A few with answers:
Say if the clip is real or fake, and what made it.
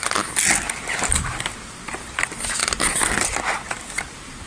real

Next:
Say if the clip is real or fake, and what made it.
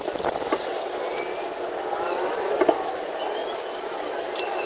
real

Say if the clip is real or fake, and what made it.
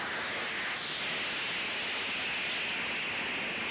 real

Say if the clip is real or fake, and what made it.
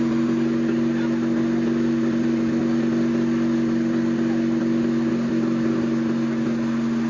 real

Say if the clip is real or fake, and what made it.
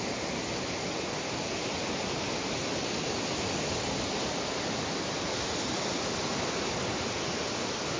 real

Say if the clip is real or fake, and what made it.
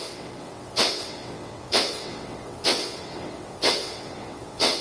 fake, vocoder, WaveNeXt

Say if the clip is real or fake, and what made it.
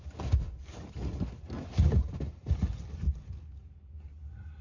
real